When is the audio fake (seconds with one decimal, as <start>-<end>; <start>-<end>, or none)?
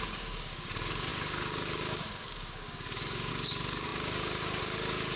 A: 0.0-5.2